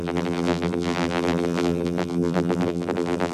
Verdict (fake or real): fake